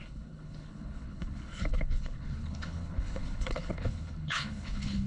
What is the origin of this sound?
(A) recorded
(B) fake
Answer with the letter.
B